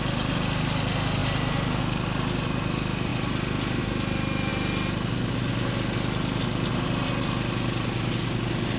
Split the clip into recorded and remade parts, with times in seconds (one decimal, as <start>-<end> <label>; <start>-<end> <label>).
0.0-8.8 recorded

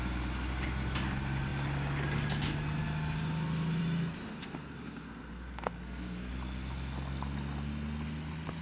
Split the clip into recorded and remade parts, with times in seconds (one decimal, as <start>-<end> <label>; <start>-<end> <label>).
0.0-4.3 recorded; 4.3-6.3 remade; 6.3-8.6 recorded

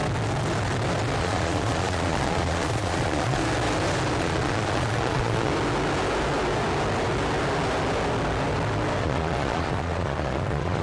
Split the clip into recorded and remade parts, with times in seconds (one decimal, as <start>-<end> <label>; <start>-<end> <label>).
0.0-1.2 recorded; 1.2-3.4 remade; 3.4-4.2 recorded; 4.2-5.5 remade; 5.5-9.0 recorded; 9.0-10.8 remade

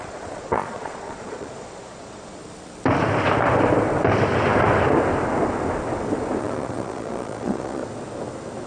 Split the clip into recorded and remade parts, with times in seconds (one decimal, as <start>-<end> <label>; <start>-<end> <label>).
0.0-2.4 remade; 2.4-6.4 recorded; 6.4-7.8 remade; 7.8-8.7 recorded

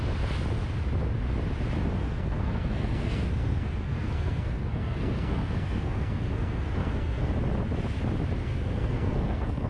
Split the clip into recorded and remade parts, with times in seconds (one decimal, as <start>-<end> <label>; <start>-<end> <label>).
0.0-2.0 recorded; 2.0-7.3 remade; 7.3-8.4 recorded; 8.4-9.7 remade

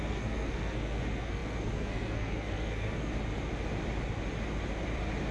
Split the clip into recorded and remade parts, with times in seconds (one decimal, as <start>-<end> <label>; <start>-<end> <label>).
0.0-3.1 remade; 3.1-5.3 recorded

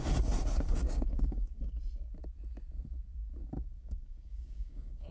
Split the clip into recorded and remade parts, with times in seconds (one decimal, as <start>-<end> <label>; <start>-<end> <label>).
0.0-0.8 recorded; 0.8-1.7 remade; 1.7-3.8 recorded; 3.8-5.1 remade